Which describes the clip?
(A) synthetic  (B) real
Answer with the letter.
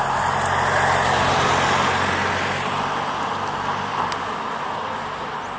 B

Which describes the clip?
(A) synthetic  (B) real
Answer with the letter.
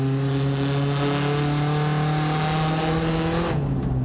B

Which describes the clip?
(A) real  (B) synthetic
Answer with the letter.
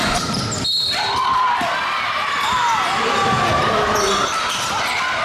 A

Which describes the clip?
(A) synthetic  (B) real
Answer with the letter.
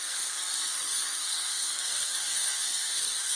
A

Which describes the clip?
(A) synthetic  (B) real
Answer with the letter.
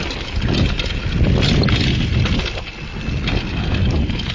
B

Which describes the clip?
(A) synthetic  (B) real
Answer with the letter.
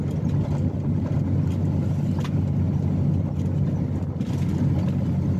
B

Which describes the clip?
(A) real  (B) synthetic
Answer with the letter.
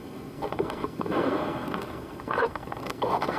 B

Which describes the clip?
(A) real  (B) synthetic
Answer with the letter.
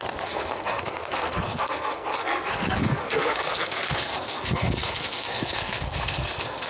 B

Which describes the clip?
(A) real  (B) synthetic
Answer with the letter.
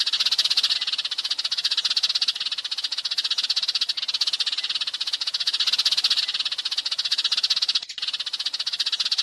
A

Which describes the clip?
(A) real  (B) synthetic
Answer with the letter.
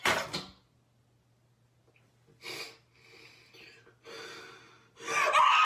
A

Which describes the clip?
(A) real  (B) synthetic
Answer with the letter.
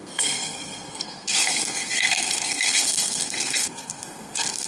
B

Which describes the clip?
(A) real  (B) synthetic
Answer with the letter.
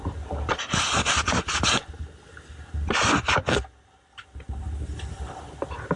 A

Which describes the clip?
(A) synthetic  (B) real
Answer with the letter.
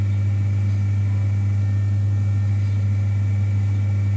B